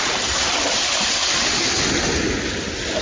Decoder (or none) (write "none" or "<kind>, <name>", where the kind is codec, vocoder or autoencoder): none